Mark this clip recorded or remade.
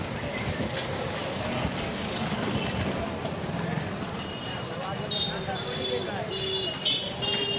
recorded